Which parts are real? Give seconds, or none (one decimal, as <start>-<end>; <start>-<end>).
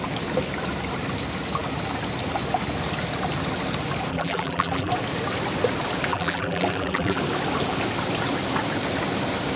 0.0-4.1; 4.9-6.1; 7.2-9.6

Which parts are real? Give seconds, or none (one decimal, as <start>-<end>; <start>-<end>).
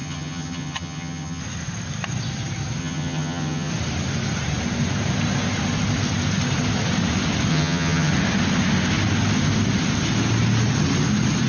1.4-2.8; 3.7-7.5; 8.1-11.5